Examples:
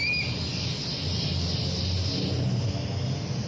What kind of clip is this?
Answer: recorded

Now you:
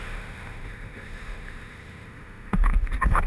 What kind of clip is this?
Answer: remade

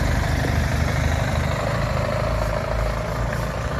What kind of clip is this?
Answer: recorded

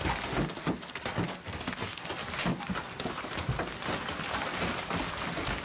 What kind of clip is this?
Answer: recorded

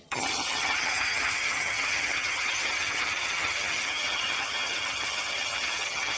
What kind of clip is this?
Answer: remade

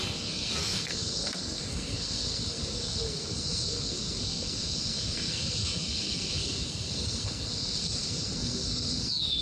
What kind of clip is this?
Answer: remade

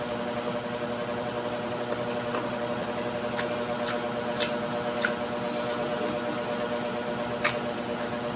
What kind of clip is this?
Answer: recorded